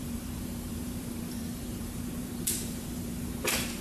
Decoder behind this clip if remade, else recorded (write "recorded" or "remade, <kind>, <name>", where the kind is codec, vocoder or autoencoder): remade, vocoder, BigVGAN v2